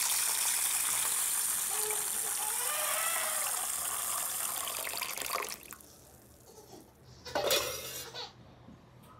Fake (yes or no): no